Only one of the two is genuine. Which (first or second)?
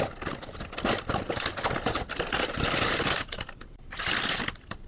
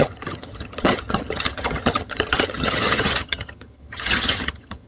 first